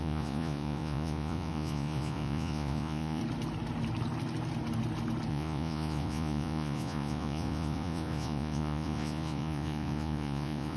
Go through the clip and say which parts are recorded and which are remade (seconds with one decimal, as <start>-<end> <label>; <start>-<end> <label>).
0.0-3.2 remade; 3.2-5.3 recorded; 5.3-10.8 remade